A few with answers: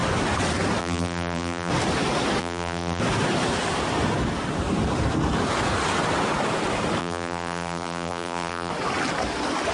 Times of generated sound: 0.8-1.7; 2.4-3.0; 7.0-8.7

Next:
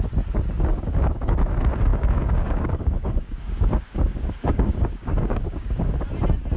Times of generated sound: 0.7-1.5; 1.9-5.9

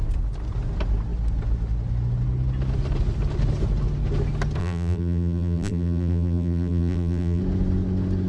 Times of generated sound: 4.6-7.4

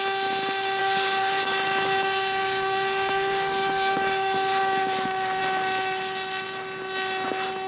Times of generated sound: 0.8-5.4

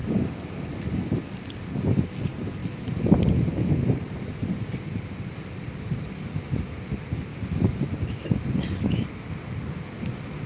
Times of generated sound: none

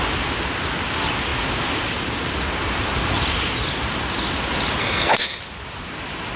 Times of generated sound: 4.8-5.4

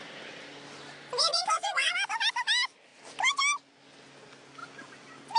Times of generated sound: 1.2-1.9

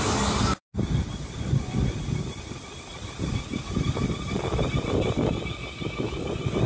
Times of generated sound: none